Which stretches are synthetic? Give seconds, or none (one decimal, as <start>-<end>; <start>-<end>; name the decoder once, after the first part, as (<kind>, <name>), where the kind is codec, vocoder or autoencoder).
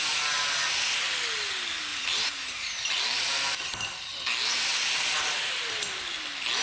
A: 1.9-3.3 (vocoder, BigVGAN v2)